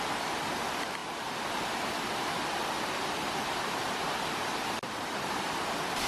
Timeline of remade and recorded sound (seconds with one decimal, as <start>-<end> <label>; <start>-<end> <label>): 0.0-6.1 recorded